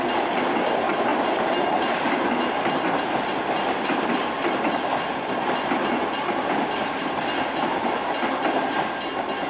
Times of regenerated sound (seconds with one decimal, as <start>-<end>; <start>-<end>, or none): none